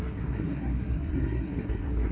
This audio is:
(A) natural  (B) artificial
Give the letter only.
B